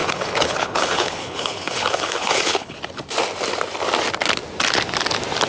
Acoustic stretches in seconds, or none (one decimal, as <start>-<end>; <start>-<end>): 2.8-5.5